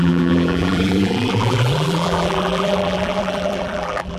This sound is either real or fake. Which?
fake